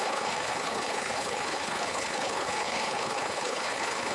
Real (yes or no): no